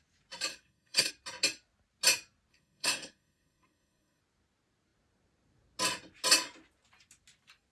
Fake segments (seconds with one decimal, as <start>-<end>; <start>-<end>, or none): 0.5-1.1; 2.5-4.2